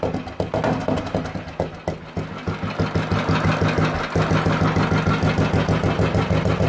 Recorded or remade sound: recorded